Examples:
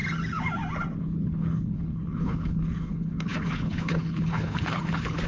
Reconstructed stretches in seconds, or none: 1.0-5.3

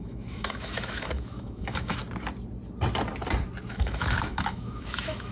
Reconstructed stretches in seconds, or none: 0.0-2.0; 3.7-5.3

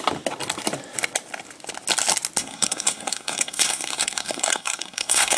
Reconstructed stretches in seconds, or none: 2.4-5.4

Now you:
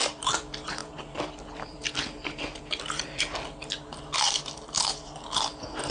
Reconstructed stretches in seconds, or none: 0.0-5.9

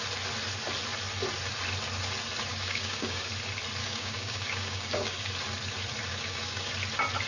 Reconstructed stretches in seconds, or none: 2.5-3.3; 3.8-5.3; 6.1-6.7

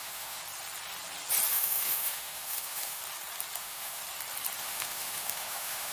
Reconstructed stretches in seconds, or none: 0.0-0.4; 1.5-3.0; 3.6-4.0; 4.6-5.9

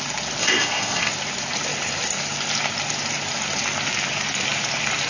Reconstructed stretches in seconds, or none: 0.4-1.1

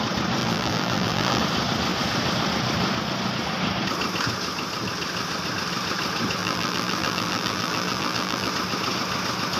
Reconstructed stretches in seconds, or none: 0.4-1.4; 6.4-8.5